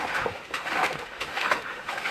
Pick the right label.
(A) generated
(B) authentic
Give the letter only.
A